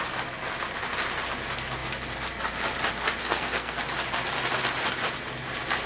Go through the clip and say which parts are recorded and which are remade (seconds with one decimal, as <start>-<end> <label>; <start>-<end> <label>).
0.0-3.2 recorded; 3.2-3.8 remade; 3.8-5.9 recorded

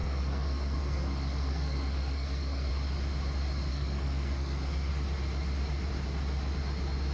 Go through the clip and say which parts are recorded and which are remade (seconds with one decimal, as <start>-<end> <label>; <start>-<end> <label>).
0.0-2.7 remade; 2.7-3.7 recorded; 3.7-4.9 remade; 4.9-7.1 recorded